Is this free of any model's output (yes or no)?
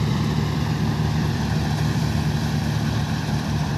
no